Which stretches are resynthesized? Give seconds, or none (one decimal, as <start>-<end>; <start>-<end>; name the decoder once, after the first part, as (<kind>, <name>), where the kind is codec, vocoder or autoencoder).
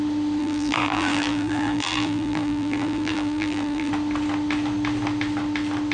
0.4-3.9 (vocoder, BigVGAN v2)